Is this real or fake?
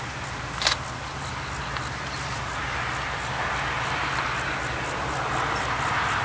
real